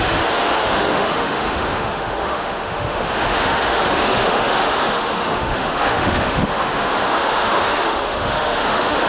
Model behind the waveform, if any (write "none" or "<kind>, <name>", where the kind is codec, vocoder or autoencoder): autoencoder, DAC-VAE